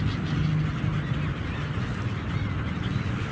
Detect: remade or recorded recorded